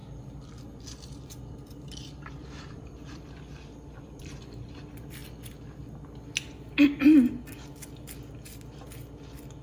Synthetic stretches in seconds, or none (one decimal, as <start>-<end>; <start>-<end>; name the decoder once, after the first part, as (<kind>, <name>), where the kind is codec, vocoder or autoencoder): 0.0-4.2 (vocoder, BigVGAN v2)